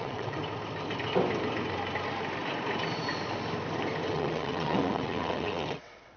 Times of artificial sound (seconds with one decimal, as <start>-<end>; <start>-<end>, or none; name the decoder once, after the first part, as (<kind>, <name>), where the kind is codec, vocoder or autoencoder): 0.0-0.4 (vocoder, WaveNeXt); 4.1-6.2